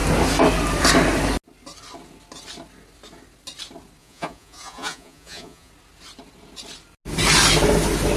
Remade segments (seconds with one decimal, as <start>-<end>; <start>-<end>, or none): 4.0-5.7